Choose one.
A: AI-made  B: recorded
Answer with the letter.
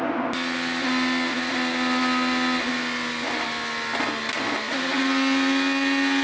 B